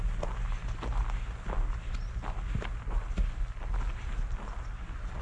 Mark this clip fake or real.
real